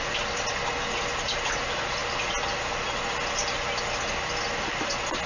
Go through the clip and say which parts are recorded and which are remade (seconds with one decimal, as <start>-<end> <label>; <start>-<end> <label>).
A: 0.0-5.3 recorded